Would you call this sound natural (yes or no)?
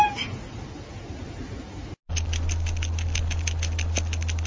yes